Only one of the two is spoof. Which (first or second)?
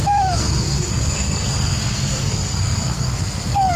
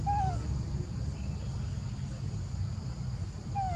first